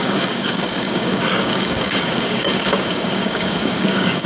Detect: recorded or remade remade